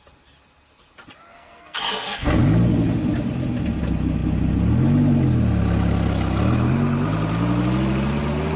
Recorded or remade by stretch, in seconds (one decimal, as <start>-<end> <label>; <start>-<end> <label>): 0.0-1.3 recorded; 1.3-2.3 remade; 2.3-8.6 recorded